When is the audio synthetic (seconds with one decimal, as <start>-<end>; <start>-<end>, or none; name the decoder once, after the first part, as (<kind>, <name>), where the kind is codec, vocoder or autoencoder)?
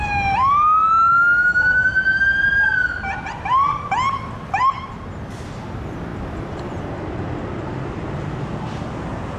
1.1-2.2 (autoencoder, DAC-VAE)